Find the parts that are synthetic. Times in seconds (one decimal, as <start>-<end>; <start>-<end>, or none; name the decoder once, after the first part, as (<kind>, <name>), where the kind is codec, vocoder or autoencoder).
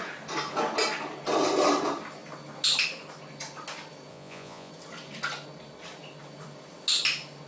4.1-4.7 (vocoder, Vocos)